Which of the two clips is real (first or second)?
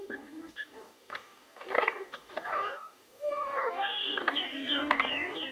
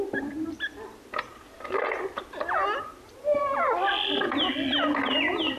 second